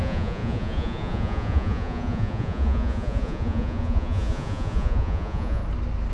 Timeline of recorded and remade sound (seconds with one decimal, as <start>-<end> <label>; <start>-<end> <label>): 0.0-5.6 remade; 5.6-6.1 recorded